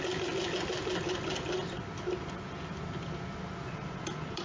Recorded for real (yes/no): yes